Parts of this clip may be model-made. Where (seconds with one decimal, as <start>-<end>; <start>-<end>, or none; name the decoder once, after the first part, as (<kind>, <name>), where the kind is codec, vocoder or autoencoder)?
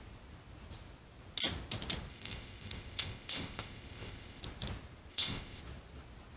2.1-4.4 (codec, ZipCodec); 5.1-5.6